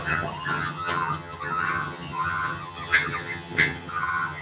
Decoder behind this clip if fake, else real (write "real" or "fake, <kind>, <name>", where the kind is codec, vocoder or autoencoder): fake, vocoder, HiFi-GAN